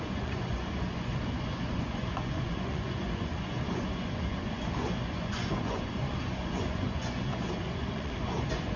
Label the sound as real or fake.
fake